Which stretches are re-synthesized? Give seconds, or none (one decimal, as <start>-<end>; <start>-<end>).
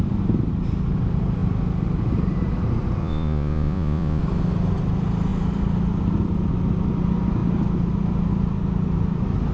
3.0-4.2